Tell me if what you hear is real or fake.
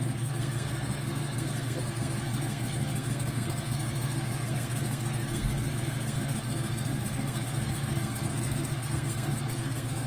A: fake